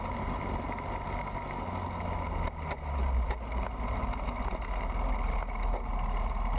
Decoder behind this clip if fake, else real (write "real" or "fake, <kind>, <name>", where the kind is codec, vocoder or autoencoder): real